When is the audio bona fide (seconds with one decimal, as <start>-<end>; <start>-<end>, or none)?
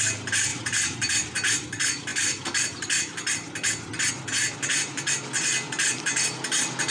0.0-0.5; 1.1-6.9